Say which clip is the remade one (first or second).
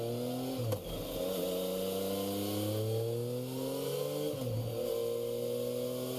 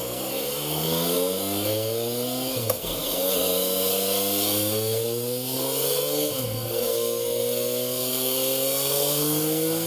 second